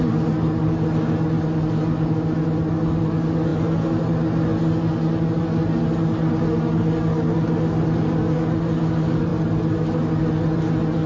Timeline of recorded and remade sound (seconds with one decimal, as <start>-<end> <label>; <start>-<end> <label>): 0.0-11.1 recorded